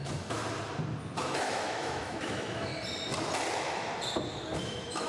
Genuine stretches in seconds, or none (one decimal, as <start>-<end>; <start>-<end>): 0.4-1.2; 2.7-3.5; 3.9-4.6